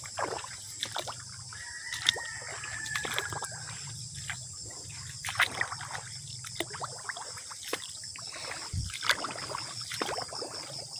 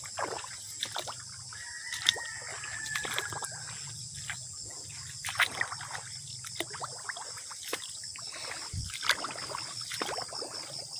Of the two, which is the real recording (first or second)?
second